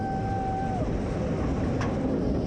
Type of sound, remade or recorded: recorded